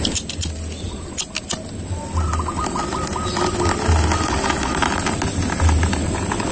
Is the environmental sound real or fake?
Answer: real